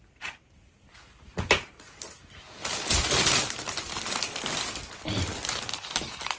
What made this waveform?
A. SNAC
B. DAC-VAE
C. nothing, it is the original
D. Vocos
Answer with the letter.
C